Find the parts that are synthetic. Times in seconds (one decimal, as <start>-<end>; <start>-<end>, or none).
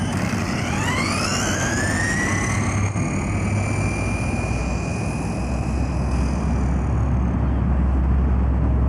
none